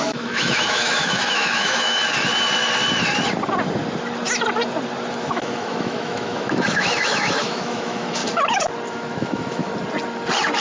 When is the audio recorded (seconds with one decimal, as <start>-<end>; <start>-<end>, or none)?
2.0-5.1; 8.2-8.9; 9.7-10.6